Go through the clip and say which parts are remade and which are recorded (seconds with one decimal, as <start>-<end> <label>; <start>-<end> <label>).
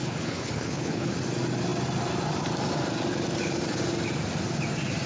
0.0-1.1 remade; 1.1-5.1 recorded